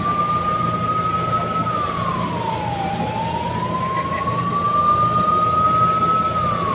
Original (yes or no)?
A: yes